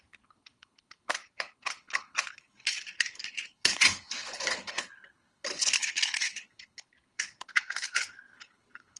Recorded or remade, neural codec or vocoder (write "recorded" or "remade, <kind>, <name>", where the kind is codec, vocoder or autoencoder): remade, codec, HILCodec